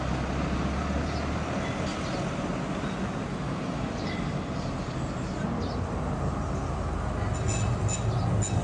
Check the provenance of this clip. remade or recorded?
recorded